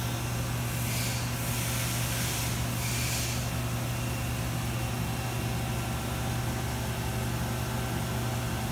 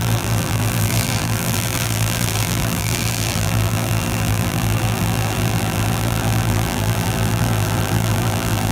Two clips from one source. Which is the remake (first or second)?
second